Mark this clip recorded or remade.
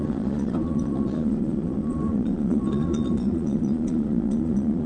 remade